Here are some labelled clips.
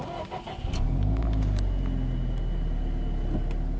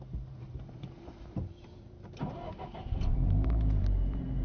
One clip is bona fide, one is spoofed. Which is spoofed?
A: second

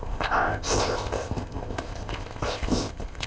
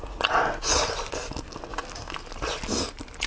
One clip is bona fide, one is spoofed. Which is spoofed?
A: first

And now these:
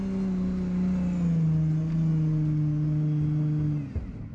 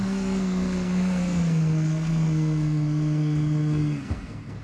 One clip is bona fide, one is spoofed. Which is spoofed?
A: second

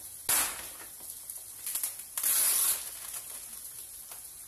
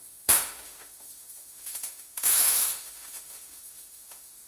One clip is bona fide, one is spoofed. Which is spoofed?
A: second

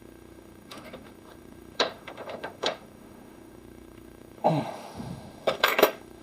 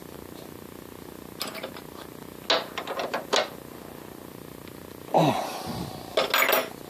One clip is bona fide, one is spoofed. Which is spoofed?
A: first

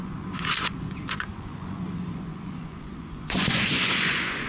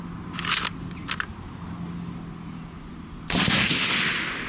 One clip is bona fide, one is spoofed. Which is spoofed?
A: first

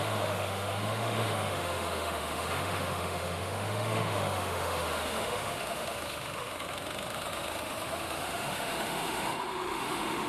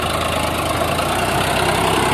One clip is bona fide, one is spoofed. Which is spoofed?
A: first